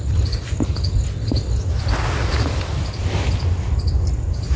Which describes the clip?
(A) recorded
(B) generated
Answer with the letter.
A